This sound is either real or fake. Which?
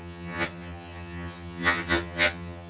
fake